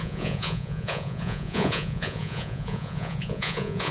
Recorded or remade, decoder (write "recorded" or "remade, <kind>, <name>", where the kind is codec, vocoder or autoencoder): remade, vocoder, Vocos